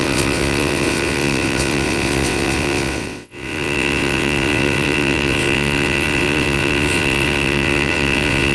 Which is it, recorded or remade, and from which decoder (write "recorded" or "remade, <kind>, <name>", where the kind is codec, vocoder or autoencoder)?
remade, vocoder, WaveNeXt